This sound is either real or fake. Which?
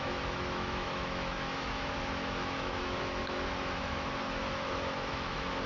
fake